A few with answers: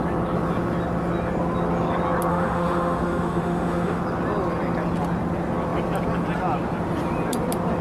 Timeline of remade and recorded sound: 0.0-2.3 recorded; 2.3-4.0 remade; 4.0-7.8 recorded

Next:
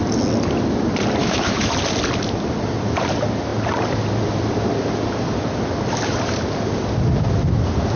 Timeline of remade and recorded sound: 0.0-1.2 recorded; 1.2-1.7 remade; 1.7-8.0 recorded

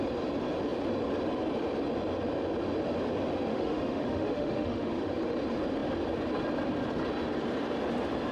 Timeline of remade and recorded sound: 0.0-3.5 recorded; 3.5-5.1 remade; 5.1-8.3 recorded